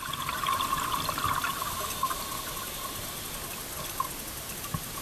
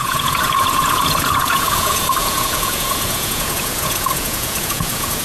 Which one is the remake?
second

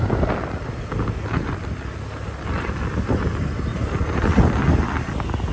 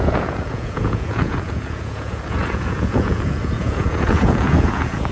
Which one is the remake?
second